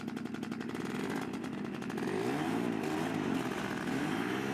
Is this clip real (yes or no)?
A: yes